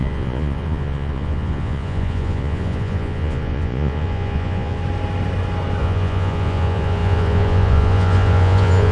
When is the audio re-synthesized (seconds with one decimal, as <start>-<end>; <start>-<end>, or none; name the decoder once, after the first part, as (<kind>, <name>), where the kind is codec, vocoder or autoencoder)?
0.0-4.8 (vocoder, Vocos); 5.8-8.9